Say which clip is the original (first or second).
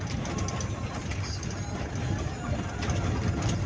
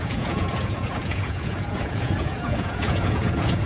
first